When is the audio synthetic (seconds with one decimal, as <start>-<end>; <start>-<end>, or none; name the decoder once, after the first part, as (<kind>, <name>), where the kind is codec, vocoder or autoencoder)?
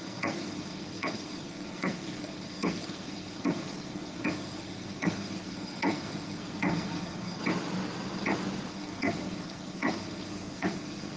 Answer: 0.0-7.4 (codec, SNAC); 8.7-11.2